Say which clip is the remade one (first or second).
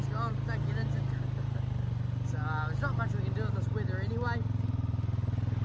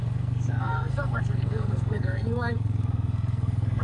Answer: second